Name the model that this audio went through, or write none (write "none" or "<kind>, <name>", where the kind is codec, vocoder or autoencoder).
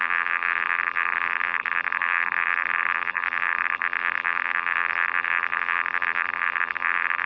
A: vocoder, BigVGAN v2